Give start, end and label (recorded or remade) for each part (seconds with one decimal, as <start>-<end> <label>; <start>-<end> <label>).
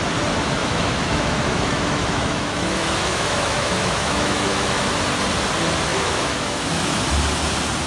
0.0-0.6 recorded; 0.6-4.9 remade; 4.9-5.9 recorded; 5.9-7.0 remade; 7.0-7.9 recorded